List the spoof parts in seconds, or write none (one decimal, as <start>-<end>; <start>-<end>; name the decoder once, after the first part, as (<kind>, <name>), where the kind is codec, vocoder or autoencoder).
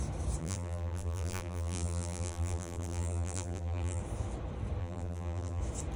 0.4-4.0 (vocoder, BigVGAN v2); 4.8-5.6